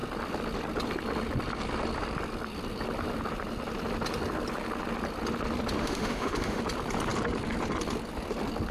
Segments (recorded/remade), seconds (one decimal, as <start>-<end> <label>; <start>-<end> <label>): 0.0-5.8 recorded; 5.8-6.6 remade; 6.6-8.7 recorded